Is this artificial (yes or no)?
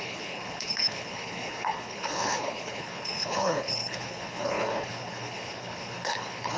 yes